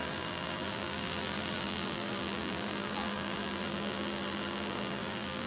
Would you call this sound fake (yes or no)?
yes